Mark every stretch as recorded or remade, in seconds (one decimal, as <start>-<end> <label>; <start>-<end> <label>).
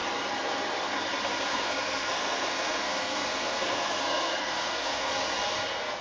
0.0-1.5 recorded; 1.5-5.1 remade; 5.1-6.0 recorded